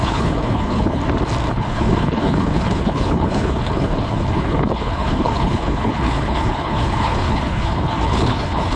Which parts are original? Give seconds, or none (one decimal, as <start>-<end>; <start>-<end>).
1.0-1.5